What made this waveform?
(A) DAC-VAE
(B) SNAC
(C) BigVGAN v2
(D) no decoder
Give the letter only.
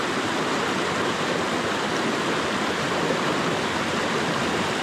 D